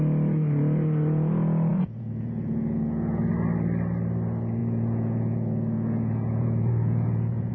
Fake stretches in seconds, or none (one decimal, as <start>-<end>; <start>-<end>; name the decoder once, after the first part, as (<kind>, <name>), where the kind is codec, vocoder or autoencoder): 1.7-3.3 (vocoder, Vocos); 4.6-7.5